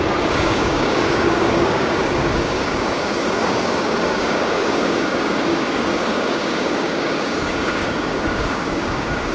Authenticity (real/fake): fake